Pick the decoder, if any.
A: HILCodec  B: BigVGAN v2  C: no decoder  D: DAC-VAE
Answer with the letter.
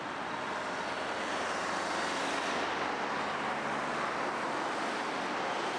C